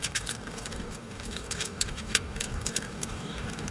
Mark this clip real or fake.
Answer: fake